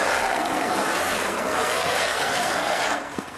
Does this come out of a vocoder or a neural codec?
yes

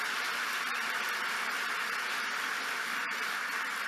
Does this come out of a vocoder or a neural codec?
no